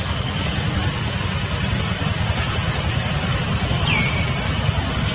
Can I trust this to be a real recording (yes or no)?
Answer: yes